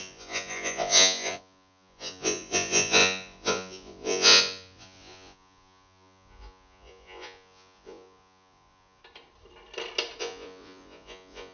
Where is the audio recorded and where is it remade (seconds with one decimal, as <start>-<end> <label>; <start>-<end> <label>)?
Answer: 0.0-9.0 remade; 9.0-10.2 recorded; 10.2-11.5 remade